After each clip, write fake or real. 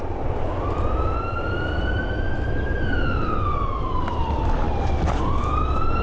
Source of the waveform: real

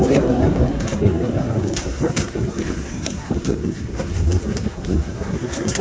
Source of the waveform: fake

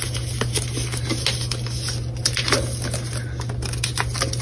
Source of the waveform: real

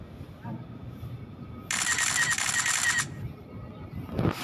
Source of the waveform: real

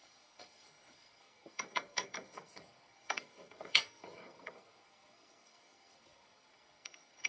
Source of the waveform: fake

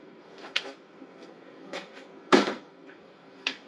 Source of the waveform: fake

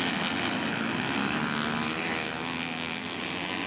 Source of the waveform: real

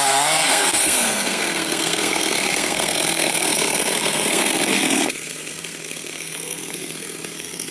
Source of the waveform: fake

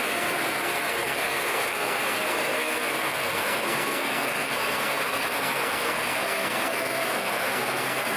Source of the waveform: fake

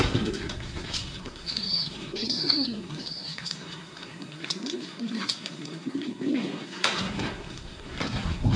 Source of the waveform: fake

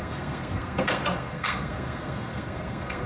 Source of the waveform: fake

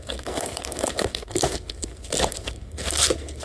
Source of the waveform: fake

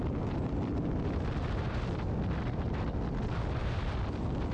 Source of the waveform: real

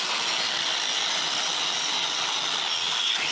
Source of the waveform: real